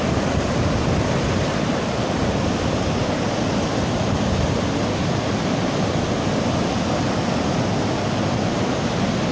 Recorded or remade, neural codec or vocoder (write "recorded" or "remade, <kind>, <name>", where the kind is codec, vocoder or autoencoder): recorded